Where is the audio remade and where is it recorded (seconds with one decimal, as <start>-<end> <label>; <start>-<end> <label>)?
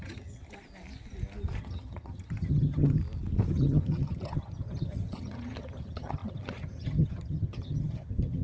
0.0-0.4 remade; 0.4-1.6 recorded; 1.6-3.0 remade; 3.0-3.5 recorded; 3.5-8.4 remade